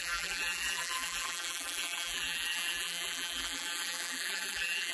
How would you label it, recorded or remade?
remade